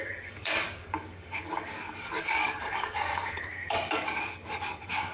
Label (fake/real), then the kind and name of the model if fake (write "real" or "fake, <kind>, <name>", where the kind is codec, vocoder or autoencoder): fake, codec, DAC